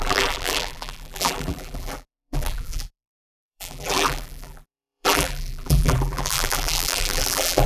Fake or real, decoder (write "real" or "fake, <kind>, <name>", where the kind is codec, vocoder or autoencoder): fake, vocoder, BigVGAN v2